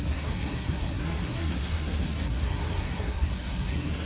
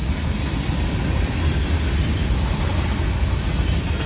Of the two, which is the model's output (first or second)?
first